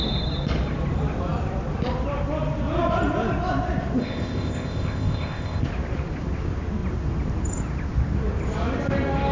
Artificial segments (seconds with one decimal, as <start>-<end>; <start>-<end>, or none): 4.0-5.6